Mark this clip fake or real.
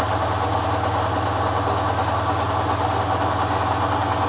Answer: real